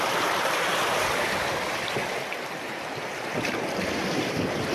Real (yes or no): yes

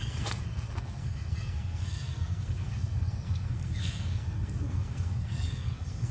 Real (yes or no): no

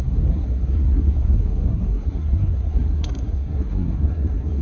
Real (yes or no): no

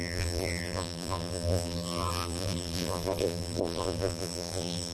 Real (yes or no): no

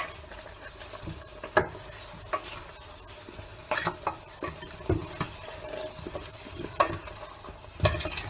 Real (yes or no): yes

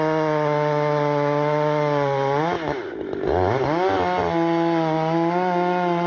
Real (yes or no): yes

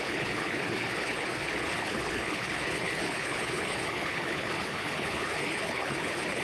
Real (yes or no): no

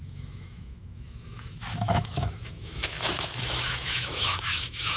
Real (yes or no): no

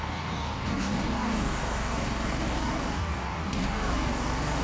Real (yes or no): no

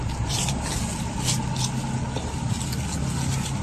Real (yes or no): yes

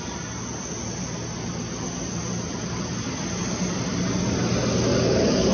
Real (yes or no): yes